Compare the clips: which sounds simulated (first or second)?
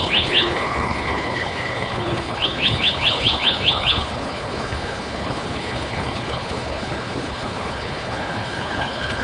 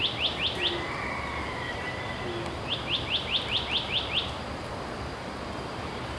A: first